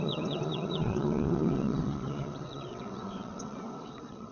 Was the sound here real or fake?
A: fake